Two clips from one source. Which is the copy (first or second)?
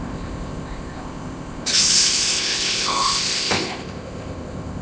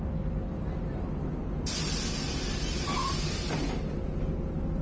first